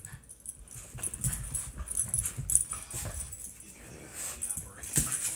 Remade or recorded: recorded